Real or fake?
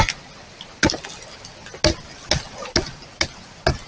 real